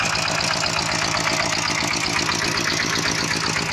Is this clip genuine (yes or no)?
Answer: yes